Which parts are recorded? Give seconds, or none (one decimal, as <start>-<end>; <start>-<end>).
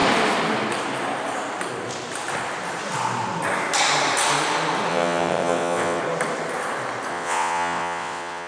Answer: 0.0-4.9; 6.0-7.1